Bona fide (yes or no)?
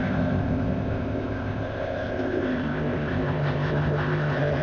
no